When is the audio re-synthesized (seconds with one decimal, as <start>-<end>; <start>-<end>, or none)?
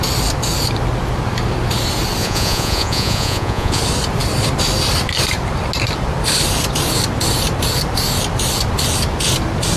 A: 2.2-3.8